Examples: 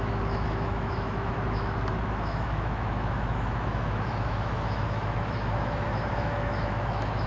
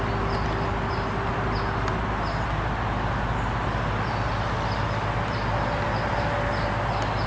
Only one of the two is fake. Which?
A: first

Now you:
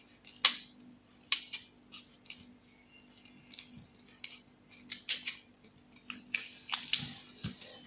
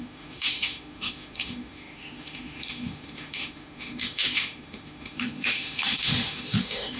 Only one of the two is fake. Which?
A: second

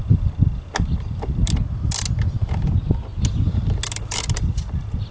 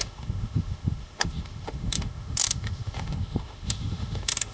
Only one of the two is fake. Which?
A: second